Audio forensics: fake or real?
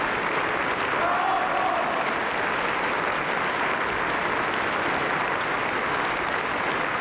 real